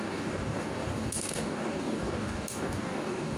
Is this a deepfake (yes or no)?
yes